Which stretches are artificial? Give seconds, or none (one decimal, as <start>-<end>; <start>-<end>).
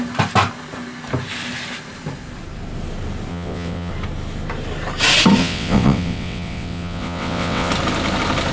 3.3-3.9; 5.4-7.7